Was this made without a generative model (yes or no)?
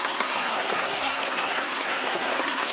no